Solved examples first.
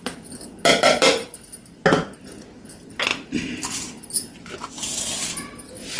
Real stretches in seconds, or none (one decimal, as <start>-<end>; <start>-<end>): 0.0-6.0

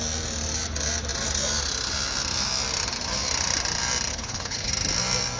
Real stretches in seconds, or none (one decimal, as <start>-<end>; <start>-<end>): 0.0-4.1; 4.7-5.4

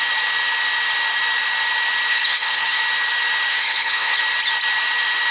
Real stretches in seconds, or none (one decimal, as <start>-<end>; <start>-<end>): 0.0-2.1; 2.8-3.5; 4.2-5.3

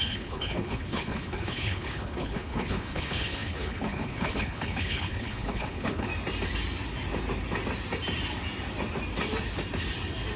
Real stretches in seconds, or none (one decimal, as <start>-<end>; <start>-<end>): 6.1-10.4